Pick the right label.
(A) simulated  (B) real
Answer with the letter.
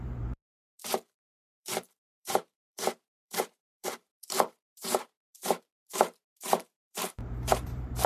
A